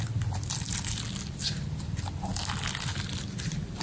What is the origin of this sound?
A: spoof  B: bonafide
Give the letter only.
B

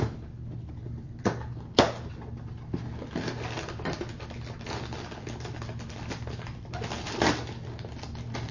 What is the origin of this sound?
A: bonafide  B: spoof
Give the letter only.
A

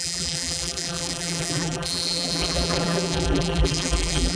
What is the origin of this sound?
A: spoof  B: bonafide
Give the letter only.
A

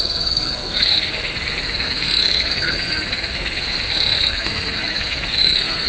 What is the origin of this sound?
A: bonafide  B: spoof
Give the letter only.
B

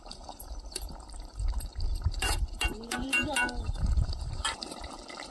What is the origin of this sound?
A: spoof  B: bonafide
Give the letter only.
A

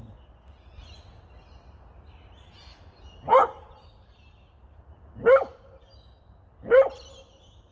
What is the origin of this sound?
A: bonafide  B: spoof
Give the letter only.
A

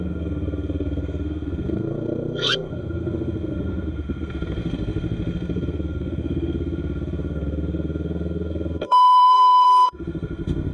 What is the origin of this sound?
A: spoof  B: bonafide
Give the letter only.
A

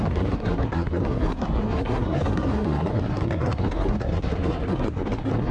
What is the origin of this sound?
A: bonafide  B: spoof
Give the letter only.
B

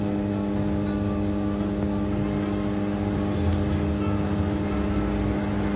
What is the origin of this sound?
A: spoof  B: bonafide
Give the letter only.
B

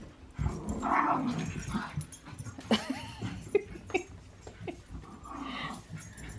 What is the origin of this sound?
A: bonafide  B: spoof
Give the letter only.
A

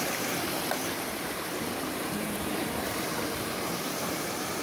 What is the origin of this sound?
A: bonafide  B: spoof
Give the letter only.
B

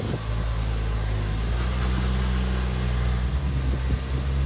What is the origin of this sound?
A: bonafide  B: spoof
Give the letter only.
A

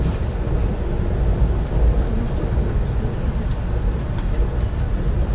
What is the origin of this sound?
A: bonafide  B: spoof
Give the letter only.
A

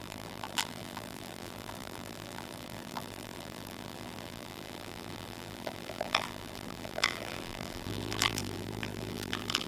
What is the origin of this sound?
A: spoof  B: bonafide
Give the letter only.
A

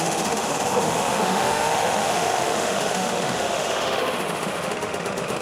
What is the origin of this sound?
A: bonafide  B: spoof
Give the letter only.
B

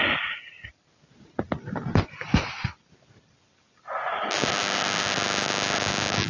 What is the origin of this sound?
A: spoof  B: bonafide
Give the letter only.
B